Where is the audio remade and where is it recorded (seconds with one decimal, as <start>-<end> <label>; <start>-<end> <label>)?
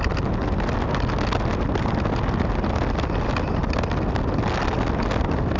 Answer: 0.0-5.6 recorded